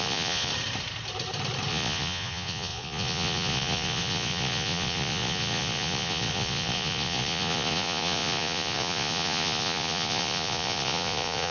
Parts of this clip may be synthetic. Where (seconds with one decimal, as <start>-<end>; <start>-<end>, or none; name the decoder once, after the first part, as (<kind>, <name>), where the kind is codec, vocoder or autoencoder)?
0.0-0.5 (vocoder, Vocos); 1.7-11.5